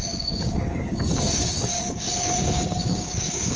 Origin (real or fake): fake